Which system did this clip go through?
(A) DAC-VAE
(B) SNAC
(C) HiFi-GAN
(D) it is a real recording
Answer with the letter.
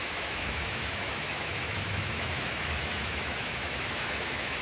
A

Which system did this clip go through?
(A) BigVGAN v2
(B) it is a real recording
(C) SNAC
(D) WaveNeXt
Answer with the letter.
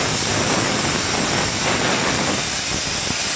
B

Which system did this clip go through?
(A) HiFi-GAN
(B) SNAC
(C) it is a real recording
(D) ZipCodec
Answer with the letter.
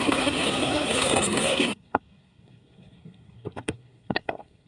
B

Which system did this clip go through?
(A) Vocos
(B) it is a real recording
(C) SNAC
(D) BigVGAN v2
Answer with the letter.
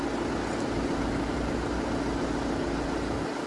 B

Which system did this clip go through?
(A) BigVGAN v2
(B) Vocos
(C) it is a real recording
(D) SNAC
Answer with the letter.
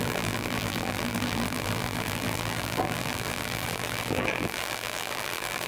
A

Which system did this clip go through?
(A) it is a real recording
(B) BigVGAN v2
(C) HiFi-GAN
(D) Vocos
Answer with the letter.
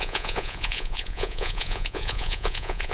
D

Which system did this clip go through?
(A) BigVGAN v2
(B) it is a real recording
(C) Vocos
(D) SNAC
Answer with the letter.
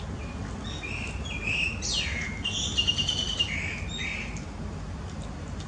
B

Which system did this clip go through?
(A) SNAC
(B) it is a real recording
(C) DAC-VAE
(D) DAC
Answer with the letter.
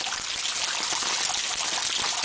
B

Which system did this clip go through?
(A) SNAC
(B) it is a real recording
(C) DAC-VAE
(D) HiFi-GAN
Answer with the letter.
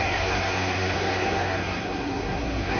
A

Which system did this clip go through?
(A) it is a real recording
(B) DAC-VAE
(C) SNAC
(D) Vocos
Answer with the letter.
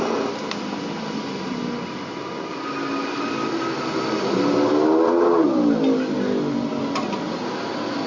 A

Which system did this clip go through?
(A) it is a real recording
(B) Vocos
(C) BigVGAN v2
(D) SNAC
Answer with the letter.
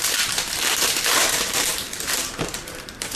C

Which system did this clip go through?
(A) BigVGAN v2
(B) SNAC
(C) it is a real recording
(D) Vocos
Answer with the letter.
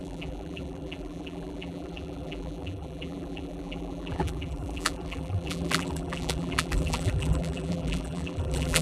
A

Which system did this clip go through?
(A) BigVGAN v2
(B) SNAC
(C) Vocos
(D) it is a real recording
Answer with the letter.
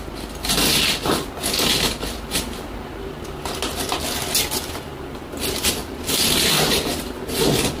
D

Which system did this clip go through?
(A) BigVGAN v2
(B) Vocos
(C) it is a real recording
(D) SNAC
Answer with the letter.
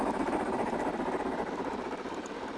C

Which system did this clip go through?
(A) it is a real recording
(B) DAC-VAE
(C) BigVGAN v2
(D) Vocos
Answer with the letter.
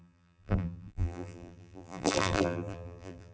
C